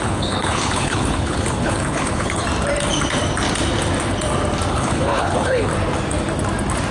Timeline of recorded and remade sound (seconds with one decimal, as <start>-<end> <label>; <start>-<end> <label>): 0.0-2.4 remade; 2.4-4.7 recorded; 4.7-5.7 remade; 5.7-6.9 recorded